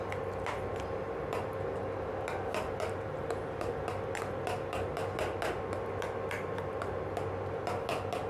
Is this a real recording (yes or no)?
yes